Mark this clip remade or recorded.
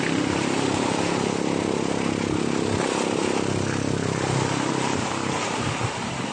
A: recorded